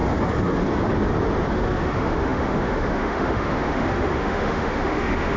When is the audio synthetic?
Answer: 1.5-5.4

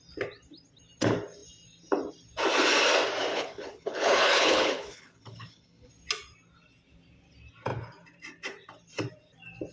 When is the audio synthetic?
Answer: 3.3-5.9

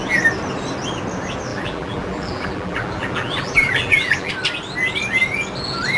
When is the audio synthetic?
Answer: 1.5-4.3

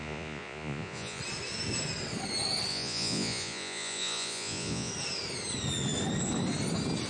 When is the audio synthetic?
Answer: 0.0-1.2; 2.7-4.9

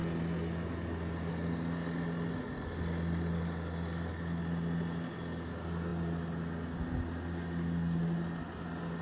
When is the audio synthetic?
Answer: none

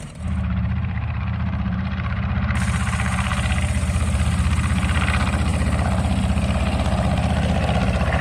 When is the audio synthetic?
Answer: 0.0-8.2